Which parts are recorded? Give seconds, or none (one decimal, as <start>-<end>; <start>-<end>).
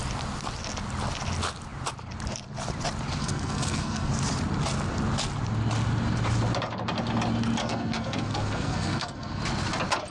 0.0-3.2; 4.1-7.6; 9.4-10.1